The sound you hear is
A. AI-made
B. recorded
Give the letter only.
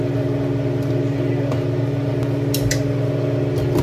B